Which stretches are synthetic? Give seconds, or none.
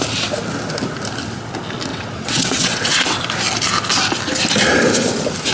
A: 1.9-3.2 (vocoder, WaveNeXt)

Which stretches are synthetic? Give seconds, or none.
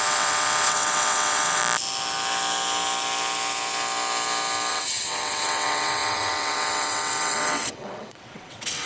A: 0.0-1.6 (vocoder, WaveNeXt); 4.7-8.9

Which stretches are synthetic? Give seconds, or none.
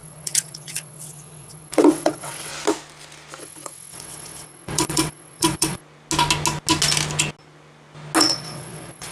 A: 0.0-2.5 (vocoder, WaveNeXt); 3.4-5.8; 8.2-9.1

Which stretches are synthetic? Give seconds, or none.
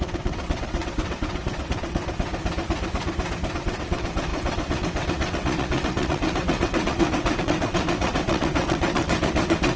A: 0.0-2.3 (vocoder, WaveNeXt); 3.5-9.8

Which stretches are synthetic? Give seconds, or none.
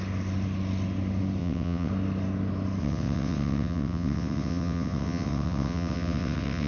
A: 1.4-1.9 (vocoder, WaveNeXt); 2.8-6.7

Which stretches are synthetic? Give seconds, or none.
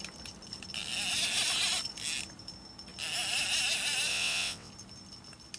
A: 4.1-4.7 (vocoder, WaveNeXt)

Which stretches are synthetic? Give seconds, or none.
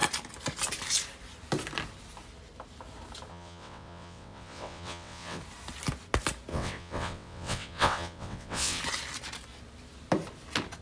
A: 3.3-5.4 (vocoder, WaveNeXt); 6.5-8.8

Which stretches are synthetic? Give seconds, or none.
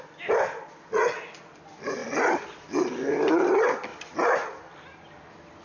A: none